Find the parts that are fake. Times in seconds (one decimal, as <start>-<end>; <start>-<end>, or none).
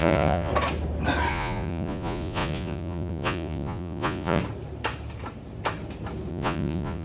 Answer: 0.0-0.5; 1.3-4.4; 6.3-7.0